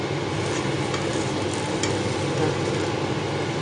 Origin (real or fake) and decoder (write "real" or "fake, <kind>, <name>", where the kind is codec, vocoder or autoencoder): real